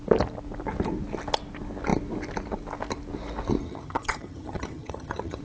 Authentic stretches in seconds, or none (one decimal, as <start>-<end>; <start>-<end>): 0.0-3.6